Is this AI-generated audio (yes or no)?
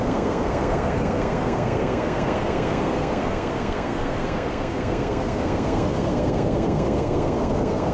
yes